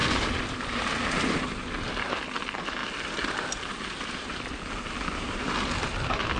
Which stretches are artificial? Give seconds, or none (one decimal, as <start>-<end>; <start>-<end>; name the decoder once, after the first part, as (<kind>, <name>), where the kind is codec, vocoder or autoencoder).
none